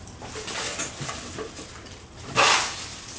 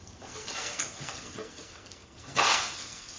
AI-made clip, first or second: second